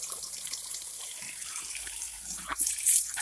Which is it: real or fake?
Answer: fake